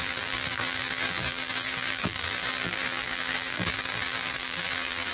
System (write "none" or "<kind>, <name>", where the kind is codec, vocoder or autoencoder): vocoder, BigVGAN v2